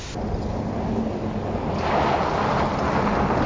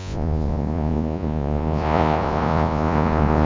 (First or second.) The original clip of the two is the first